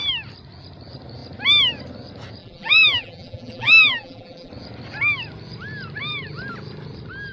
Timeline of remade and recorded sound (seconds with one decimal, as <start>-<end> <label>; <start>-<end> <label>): 0.0-2.4 recorded; 2.4-4.5 remade; 4.5-7.3 recorded